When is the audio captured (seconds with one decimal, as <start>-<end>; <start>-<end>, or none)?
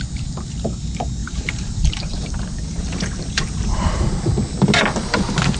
0.0-1.2; 4.1-5.6